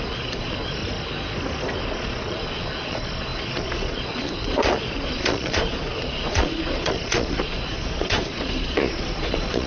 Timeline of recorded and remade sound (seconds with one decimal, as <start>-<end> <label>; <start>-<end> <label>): 0.0-0.8 remade; 0.8-1.8 recorded; 1.8-9.7 remade